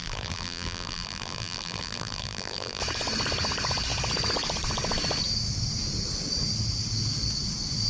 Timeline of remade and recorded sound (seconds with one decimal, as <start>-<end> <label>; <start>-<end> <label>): 0.0-2.8 remade; 2.8-7.9 recorded